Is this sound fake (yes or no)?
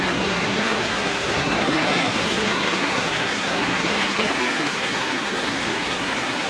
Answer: yes